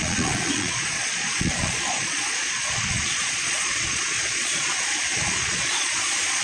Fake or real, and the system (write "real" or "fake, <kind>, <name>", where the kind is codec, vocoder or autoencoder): fake, vocoder, Vocos